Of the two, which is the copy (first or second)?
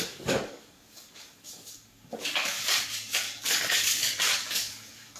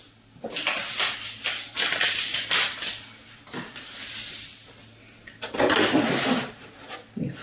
first